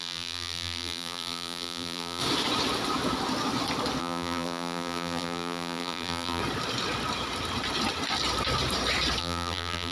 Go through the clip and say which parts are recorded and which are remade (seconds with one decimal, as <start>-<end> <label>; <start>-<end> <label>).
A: 0.0-2.2 remade; 2.2-4.0 recorded; 4.0-6.4 remade; 6.4-9.2 recorded; 9.2-9.9 remade